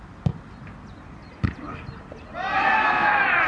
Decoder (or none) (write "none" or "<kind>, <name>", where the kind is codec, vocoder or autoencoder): none